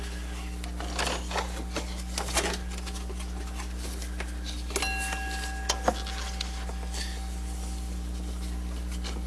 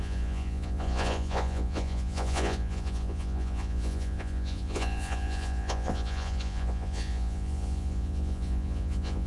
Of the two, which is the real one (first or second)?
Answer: first